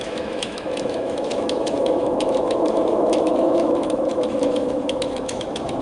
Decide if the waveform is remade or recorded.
remade